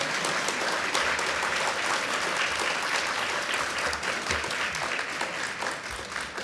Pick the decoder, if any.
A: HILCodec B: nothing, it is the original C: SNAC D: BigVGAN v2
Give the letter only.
B